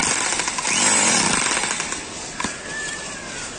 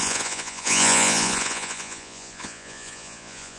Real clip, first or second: first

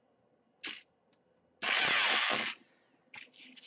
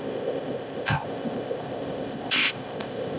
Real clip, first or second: first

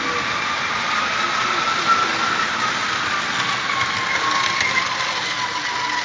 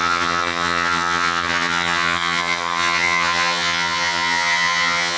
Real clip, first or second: first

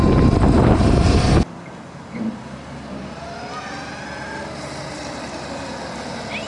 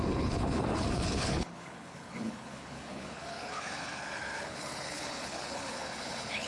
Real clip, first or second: first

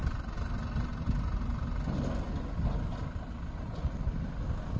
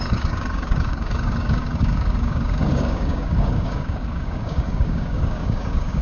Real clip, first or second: first